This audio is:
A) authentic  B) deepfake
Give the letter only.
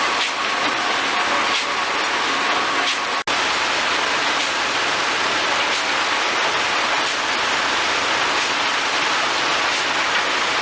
A